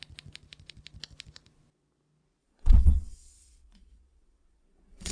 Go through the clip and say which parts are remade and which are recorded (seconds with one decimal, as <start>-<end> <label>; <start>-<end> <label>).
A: 0.0-2.4 recorded; 2.4-5.1 remade